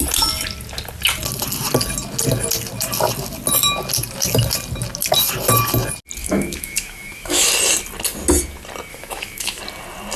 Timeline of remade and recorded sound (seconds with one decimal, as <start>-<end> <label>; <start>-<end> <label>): 0.0-6.2 recorded; 6.2-7.5 remade; 7.5-8.9 recorded; 8.9-9.6 remade; 9.6-10.2 recorded